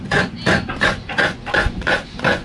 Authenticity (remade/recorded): remade